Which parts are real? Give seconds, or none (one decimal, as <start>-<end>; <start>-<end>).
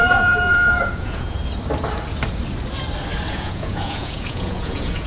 1.4-3.3